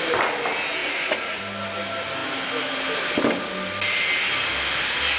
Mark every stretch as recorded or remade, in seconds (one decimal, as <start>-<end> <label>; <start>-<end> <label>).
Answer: 0.0-0.8 recorded; 0.8-1.4 remade; 1.4-5.2 recorded